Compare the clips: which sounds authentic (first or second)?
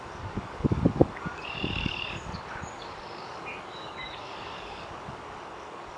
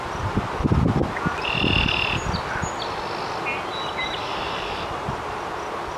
second